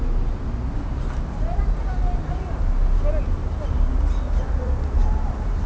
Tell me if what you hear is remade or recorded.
recorded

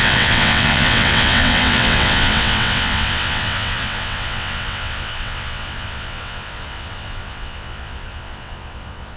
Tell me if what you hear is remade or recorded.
remade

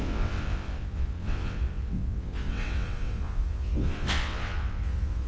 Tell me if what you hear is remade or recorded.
remade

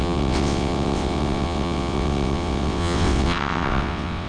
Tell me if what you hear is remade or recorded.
remade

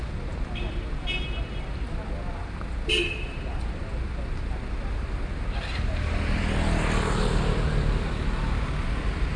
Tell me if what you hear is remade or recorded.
recorded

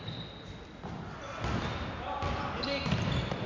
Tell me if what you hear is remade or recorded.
recorded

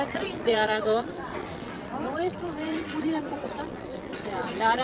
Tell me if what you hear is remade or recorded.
remade